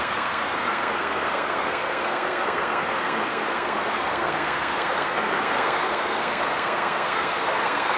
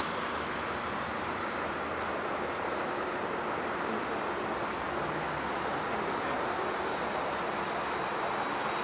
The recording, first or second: second